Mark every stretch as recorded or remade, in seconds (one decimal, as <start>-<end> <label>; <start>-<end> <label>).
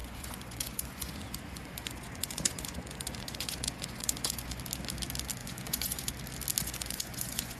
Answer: 0.0-4.6 remade; 4.6-5.4 recorded; 5.4-6.1 remade; 6.1-6.6 recorded; 6.6-7.6 remade